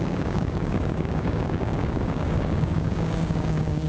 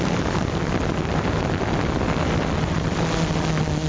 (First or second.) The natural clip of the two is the second